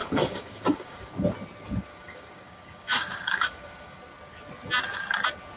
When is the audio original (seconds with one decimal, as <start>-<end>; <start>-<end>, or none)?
1.1-1.9; 4.0-5.6